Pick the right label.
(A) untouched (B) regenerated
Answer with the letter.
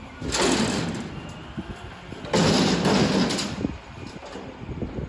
A